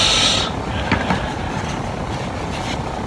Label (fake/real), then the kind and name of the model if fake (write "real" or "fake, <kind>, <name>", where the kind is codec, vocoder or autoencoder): real